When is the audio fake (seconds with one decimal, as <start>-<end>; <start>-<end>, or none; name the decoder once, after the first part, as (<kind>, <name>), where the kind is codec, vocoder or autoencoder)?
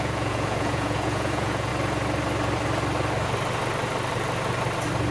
0.0-1.7 (vocoder, Vocos)